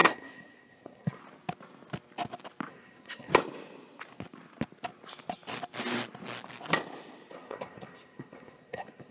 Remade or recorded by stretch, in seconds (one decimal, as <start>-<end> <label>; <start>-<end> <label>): 0.0-1.2 remade; 1.2-2.7 recorded; 2.7-3.3 remade; 3.3-7.3 recorded; 7.3-9.1 remade